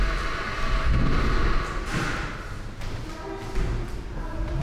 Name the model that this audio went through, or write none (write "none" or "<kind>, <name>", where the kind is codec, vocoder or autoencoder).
none